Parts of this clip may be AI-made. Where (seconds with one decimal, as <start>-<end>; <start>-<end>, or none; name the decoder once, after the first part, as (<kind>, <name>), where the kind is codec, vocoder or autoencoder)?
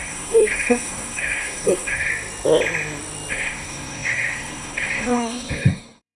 0.0-2.1 (codec, SNAC); 3.3-6.2